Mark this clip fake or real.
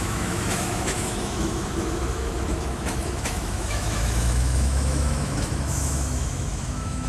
fake